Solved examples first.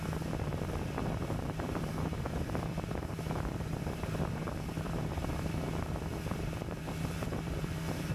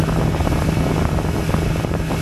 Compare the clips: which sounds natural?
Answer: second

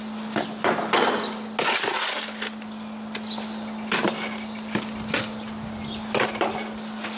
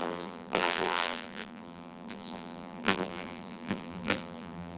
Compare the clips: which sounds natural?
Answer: first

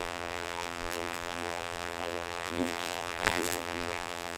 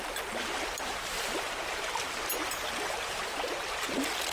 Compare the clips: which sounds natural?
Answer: second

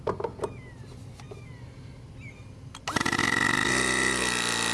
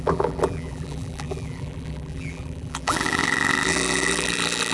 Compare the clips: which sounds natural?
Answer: first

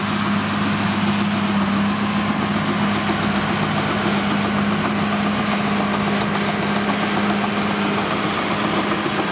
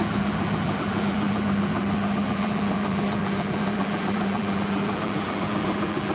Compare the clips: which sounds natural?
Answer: first